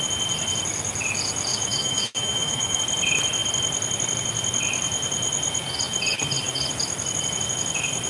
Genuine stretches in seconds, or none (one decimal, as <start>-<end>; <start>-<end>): 0.0-1.5; 2.8-8.1